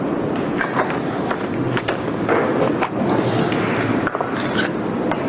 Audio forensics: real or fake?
real